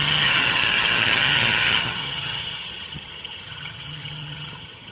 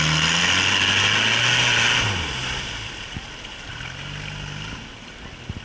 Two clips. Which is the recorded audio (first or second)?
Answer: second